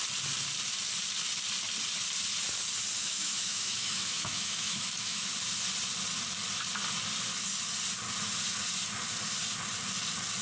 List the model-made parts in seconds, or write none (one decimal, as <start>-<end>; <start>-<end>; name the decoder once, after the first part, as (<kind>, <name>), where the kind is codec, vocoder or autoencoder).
3.0-5.3 (autoencoder, DAC-VAE)